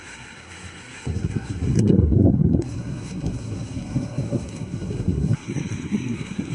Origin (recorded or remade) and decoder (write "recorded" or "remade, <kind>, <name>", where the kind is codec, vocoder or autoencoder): remade, codec, SNAC